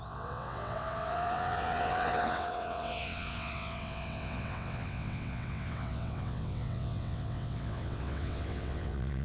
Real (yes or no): no